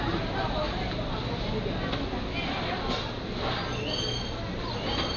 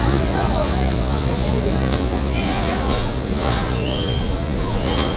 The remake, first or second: second